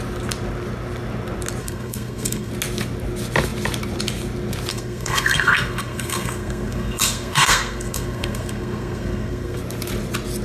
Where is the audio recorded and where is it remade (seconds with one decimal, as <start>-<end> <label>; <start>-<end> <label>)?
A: 0.0-1.6 recorded; 1.6-2.5 remade; 2.5-4.7 recorded; 4.7-9.6 remade; 9.6-10.4 recorded